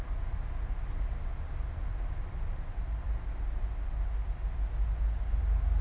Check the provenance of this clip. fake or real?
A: real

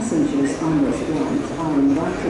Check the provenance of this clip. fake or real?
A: real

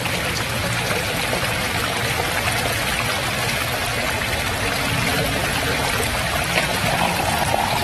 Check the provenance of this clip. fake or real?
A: real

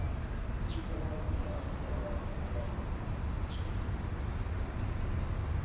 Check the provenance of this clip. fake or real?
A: real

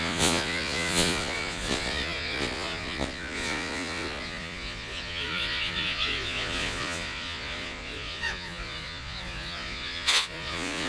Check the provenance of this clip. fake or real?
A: fake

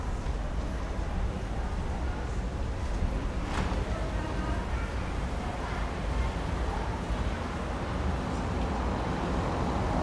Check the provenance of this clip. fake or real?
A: real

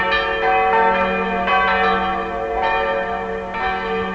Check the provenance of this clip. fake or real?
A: real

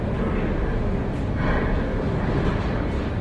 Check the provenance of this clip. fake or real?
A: real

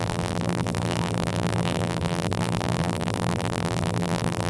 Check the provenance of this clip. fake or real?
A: fake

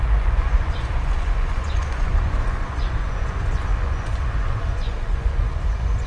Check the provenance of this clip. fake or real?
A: fake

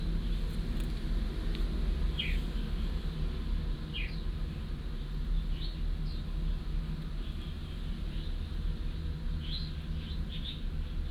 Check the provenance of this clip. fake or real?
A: real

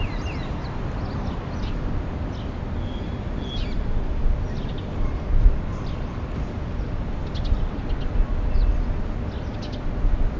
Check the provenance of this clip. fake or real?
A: real